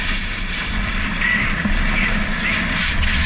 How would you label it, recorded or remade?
recorded